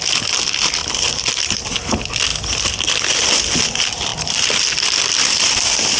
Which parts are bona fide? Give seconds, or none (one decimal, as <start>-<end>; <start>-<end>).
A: 0.0-0.8; 1.8-2.3; 2.9-4.1; 4.6-6.0